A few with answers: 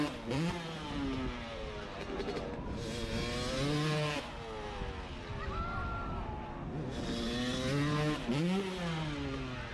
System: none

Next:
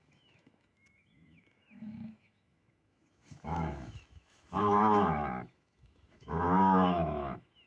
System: autoencoder, DAC-VAE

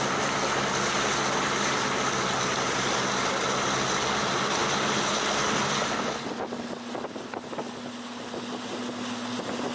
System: none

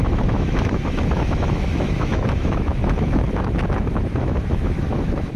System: autoencoder, DAC-VAE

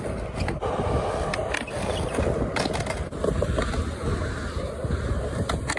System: none